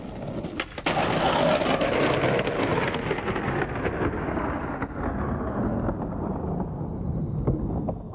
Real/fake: real